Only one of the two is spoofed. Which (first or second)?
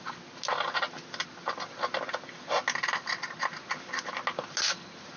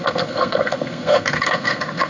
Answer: second